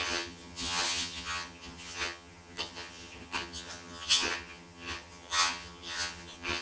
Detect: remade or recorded remade